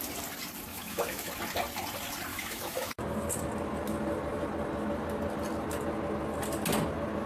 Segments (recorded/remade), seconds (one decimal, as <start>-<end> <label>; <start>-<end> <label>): 0.0-0.7 recorded; 0.7-1.3 remade; 1.3-2.3 recorded; 2.3-3.0 remade; 3.0-7.3 recorded